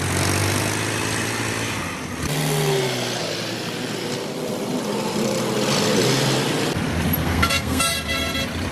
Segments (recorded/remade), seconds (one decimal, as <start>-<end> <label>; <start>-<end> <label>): 0.0-7.2 recorded; 7.2-7.8 remade; 7.8-8.7 recorded